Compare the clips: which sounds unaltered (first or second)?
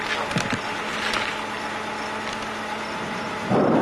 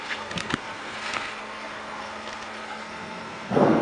first